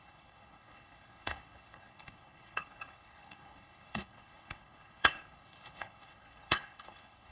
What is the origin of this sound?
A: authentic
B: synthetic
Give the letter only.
B